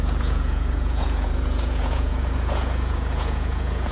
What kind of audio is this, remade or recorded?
remade